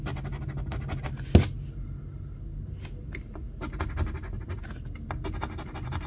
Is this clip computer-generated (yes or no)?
no